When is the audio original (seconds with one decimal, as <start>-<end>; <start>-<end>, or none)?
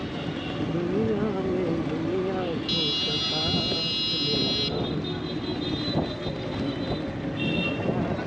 0.0-8.3